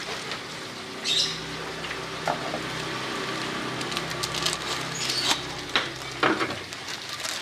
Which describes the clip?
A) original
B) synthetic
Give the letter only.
A